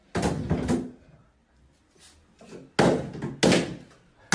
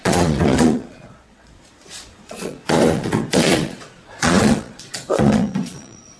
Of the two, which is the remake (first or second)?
second